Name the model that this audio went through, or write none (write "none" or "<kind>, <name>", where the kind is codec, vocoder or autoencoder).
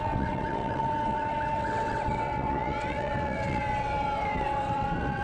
vocoder, WaveNeXt